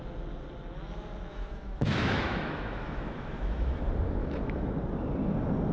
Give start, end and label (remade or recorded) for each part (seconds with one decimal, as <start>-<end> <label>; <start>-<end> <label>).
0.0-1.3 recorded; 1.3-3.8 remade; 3.8-4.2 recorded; 4.2-4.7 remade; 4.7-5.7 recorded